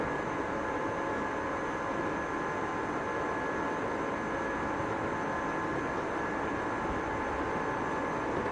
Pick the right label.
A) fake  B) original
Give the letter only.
B